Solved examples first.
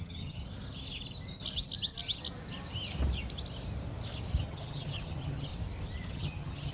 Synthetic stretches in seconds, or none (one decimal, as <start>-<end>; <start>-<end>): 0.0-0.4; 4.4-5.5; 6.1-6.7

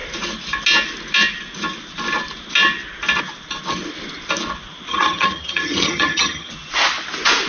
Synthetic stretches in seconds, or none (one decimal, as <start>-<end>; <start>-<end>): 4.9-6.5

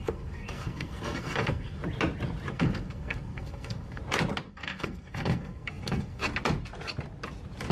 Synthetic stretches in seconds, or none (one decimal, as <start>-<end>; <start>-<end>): 0.0-1.8; 2.5-4.0; 4.5-6.2